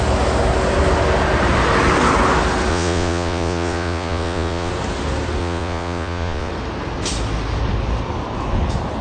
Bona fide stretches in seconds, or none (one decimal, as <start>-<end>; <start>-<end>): 0.0-2.7; 4.7-5.4; 6.5-9.0